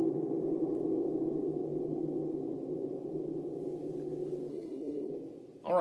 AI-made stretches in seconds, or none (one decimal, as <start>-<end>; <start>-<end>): 4.5-5.1